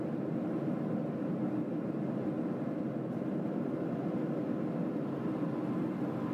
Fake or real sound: real